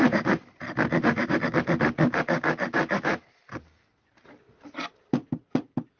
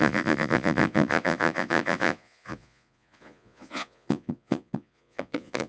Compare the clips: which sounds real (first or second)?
first